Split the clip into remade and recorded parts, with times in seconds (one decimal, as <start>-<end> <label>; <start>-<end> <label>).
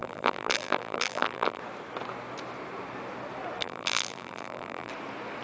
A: 0.0-1.6 remade; 1.6-3.6 recorded; 3.6-4.9 remade; 4.9-5.4 recorded